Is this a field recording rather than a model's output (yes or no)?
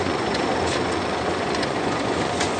no